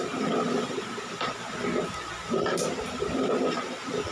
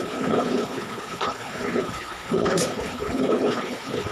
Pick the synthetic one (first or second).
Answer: second